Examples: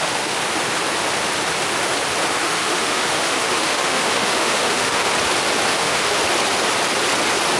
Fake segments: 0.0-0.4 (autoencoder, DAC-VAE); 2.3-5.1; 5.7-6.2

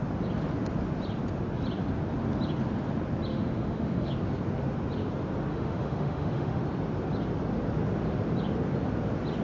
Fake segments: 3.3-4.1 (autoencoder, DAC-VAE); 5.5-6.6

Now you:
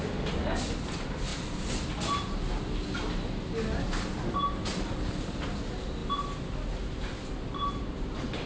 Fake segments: none

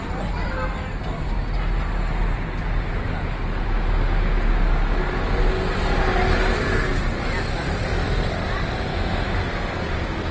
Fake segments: 8.9-9.4 (autoencoder, DAC-VAE)

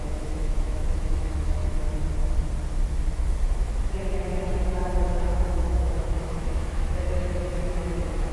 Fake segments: 0.0-1.6 (autoencoder, DAC-VAE); 3.6-4.3; 5.0-8.3